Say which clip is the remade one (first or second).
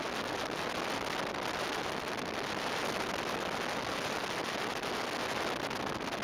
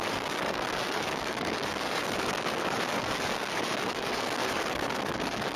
second